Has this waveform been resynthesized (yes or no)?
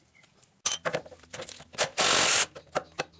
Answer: no